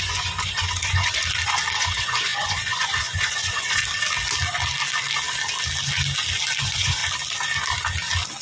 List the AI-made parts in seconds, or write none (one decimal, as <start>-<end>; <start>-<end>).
0.0-1.2; 1.8-3.8; 6.6-7.0